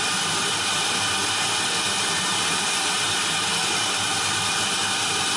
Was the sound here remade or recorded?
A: recorded